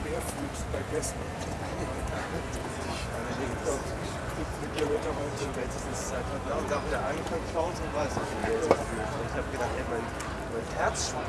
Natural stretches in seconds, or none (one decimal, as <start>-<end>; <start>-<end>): 8.4-10.6

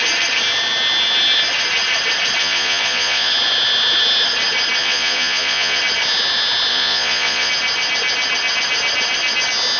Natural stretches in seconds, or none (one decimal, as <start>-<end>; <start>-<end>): 0.0-2.4; 3.3-4.8; 5.8-6.7; 7.5-9.8

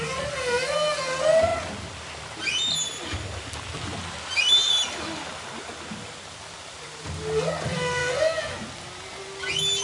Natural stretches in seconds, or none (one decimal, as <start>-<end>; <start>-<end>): 0.0-9.8

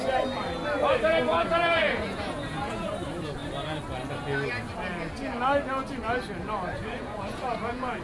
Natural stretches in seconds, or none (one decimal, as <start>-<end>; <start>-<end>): 0.0-1.3; 2.9-6.8

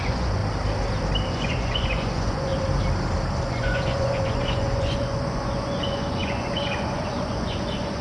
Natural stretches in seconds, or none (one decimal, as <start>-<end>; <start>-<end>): 0.4-1.3; 2.5-3.5

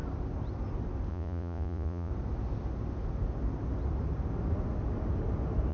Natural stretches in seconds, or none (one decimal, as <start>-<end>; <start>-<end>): 0.0-1.1; 2.1-5.7

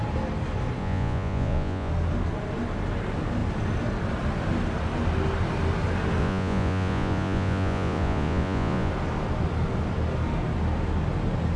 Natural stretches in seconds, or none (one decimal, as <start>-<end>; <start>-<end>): 0.0-0.8; 1.9-6.2; 8.9-11.6

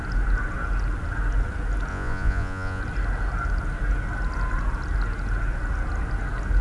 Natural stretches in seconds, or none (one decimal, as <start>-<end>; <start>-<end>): 0.0-1.9; 2.8-6.6